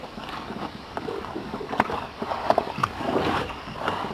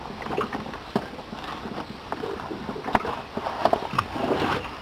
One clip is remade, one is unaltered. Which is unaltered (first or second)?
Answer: second